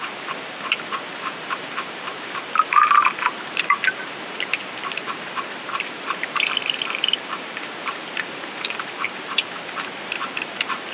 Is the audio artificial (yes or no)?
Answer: yes